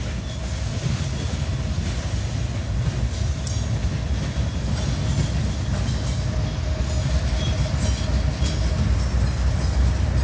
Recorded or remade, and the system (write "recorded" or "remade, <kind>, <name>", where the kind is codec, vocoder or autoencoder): recorded